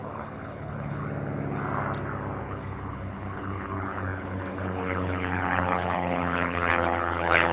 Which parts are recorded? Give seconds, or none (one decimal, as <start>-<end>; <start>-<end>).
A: 1.0-2.4